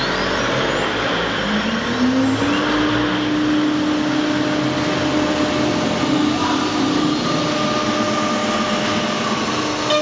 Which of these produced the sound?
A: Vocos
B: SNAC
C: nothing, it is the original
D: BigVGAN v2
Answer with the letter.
C